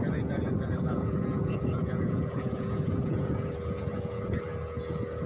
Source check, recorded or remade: remade